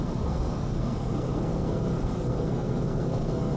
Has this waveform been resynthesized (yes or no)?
yes